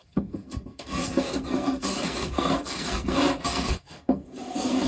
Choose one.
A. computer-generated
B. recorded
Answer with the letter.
A